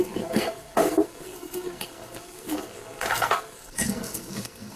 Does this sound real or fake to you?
fake